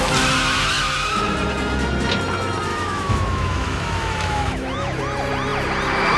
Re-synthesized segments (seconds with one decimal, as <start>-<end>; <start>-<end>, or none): 2.7-5.0